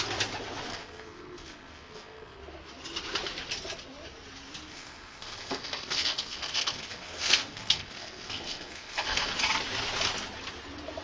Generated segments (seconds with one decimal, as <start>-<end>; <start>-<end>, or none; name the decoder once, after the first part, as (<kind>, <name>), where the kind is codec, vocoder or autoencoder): 0.7-2.4 (codec, SNAC); 4.7-9.3